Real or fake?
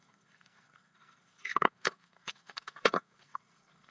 fake